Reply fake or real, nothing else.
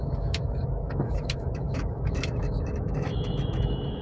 fake